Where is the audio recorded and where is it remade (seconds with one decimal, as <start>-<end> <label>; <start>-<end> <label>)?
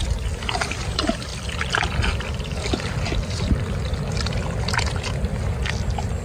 0.0-6.2 recorded